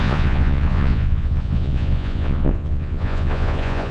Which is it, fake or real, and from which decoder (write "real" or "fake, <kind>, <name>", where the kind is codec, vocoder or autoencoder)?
fake, vocoder, Vocos